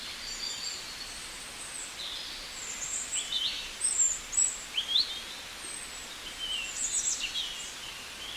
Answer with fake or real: real